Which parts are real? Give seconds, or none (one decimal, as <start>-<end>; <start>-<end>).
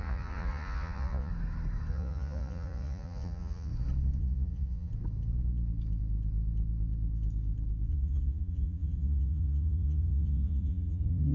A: 1.3-1.9; 3.7-4.2; 4.9-7.9